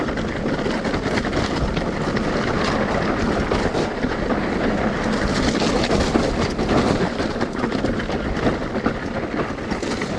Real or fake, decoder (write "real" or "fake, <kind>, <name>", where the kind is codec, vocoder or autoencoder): real